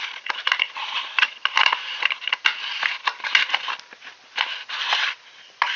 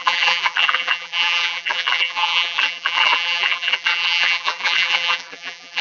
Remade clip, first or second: second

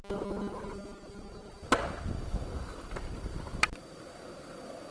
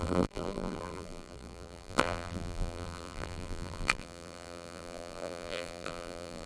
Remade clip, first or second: second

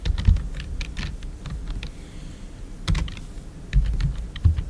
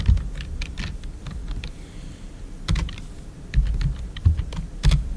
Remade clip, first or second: second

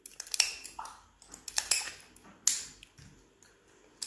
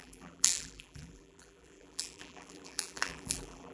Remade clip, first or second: second